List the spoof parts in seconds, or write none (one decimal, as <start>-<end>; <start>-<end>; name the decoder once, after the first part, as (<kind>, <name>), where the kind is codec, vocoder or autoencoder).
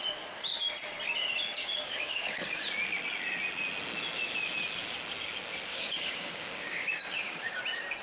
1.6-2.6 (codec, DAC); 5.7-7.6